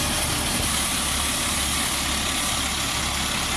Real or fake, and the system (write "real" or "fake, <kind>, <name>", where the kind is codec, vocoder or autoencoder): real